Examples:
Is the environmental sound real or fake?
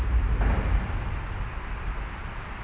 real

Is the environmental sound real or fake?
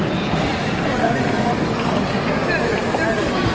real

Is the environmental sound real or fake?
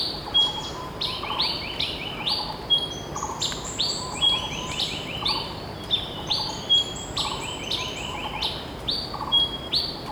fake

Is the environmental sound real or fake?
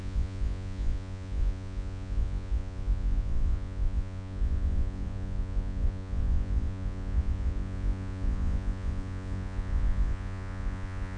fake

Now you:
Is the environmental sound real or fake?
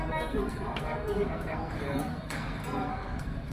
fake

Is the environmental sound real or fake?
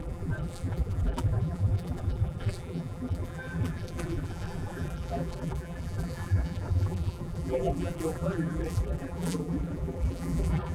fake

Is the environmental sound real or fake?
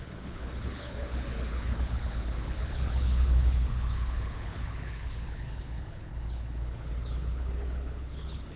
fake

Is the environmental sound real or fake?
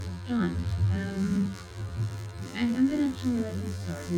fake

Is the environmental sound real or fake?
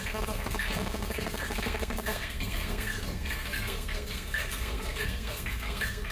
fake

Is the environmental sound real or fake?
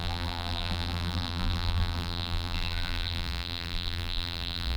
fake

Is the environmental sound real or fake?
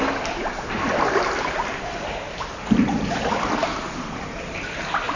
real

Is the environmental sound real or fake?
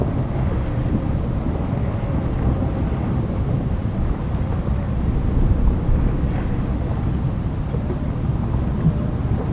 real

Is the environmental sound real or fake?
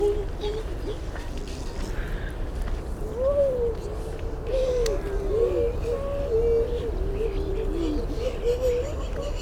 real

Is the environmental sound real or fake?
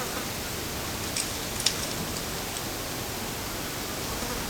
real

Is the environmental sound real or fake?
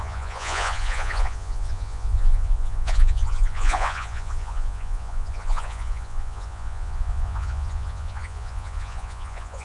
fake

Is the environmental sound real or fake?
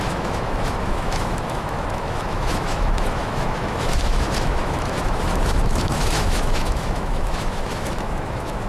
fake